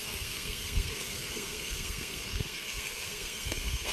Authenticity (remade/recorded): remade